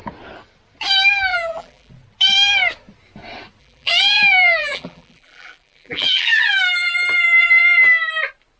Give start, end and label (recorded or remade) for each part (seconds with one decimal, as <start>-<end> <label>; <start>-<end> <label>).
0.0-1.3 recorded; 1.3-1.9 remade; 1.9-3.6 recorded; 3.6-6.4 remade; 6.4-7.6 recorded; 7.6-8.1 remade; 8.1-8.6 recorded